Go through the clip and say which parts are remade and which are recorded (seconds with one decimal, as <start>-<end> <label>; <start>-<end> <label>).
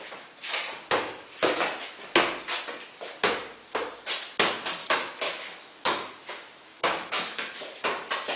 0.0-4.8 recorded; 4.8-7.8 remade; 7.8-8.4 recorded